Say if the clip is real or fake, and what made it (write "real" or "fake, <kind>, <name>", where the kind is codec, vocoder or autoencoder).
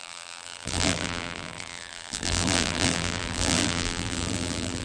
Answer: fake, vocoder, BigVGAN v2